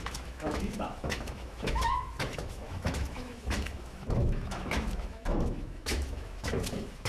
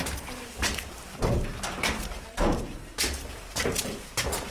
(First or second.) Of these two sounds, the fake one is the first